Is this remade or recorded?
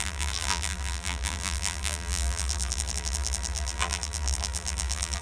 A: remade